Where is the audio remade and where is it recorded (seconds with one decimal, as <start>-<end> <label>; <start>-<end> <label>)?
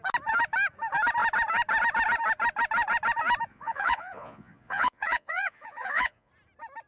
0.0-3.5 recorded; 3.5-6.3 remade; 6.3-6.9 recorded